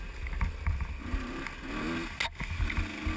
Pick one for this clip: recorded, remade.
recorded